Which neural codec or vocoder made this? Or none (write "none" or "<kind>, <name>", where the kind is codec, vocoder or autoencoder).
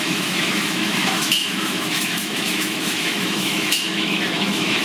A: autoencoder, DAC-VAE